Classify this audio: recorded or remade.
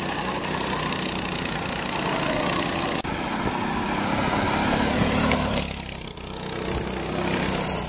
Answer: recorded